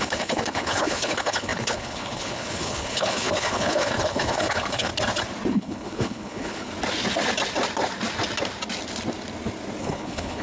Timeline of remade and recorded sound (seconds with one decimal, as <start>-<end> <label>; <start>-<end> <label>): 0.0-4.9 remade; 4.9-5.5 recorded; 5.5-6.7 remade; 6.7-9.8 recorded; 9.8-10.4 remade